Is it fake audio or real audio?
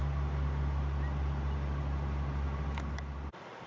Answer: real